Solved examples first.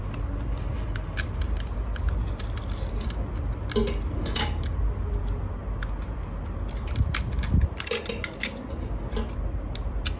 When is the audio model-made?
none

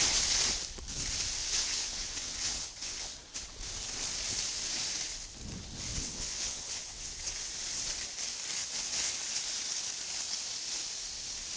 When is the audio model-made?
1.4-3.1 (vocoder, WaveNeXt); 5.9-7.5; 8.6-9.1